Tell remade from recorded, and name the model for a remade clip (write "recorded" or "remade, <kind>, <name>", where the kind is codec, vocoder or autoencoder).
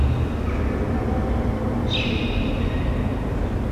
recorded